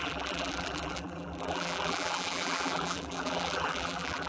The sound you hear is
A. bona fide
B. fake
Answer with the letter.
B